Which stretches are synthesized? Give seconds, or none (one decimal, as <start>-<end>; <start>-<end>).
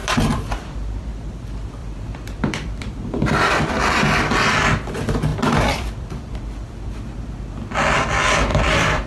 0.0-1.4; 1.8-3.7; 5.3-7.4; 8.5-9.1